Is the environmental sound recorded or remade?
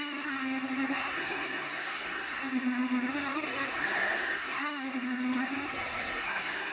remade